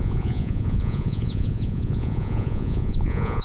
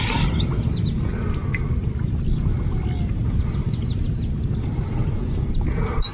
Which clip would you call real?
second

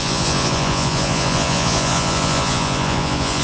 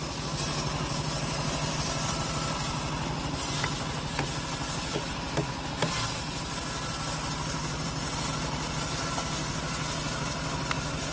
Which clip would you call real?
second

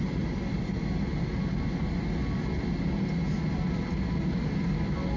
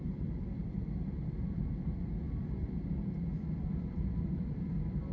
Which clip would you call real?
first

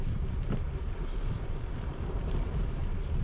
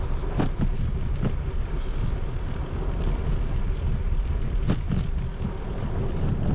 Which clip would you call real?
second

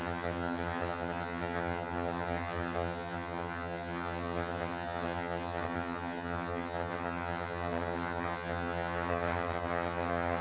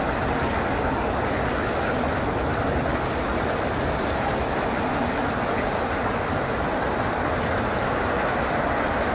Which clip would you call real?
second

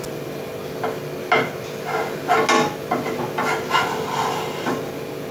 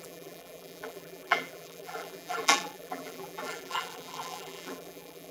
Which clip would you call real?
first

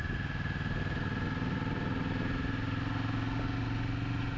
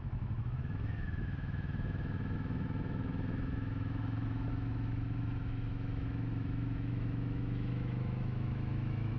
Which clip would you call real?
first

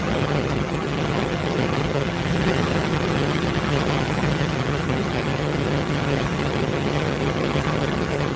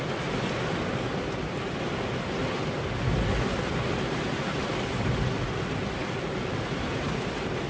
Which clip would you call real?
second